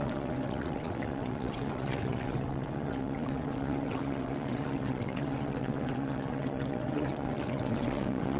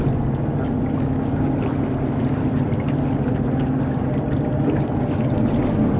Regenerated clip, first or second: first